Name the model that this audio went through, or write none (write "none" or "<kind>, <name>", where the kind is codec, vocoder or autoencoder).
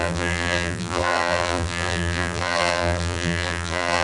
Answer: vocoder, BigVGAN v2